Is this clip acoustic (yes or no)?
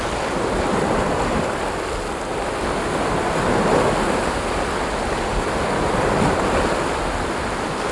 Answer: yes